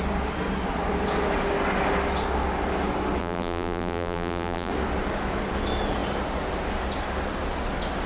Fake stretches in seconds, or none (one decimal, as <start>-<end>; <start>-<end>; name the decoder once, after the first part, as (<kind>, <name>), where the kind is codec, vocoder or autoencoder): 3.2-4.7 (vocoder, BigVGAN v2)